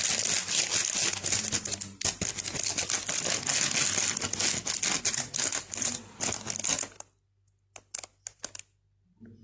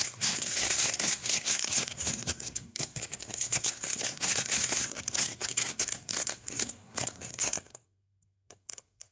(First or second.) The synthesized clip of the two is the second